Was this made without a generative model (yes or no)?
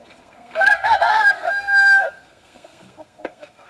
no